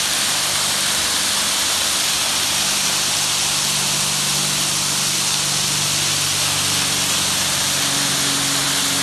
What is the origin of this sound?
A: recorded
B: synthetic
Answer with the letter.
A